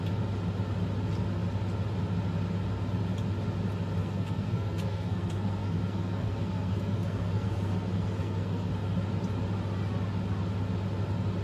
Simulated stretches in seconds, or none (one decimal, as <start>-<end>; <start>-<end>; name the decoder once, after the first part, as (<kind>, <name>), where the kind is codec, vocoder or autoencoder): 4.0-8.7 (codec, SNAC)